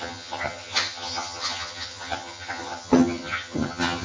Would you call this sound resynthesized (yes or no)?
yes